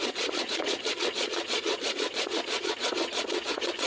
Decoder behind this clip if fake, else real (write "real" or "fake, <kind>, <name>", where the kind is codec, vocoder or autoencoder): fake, vocoder, Vocos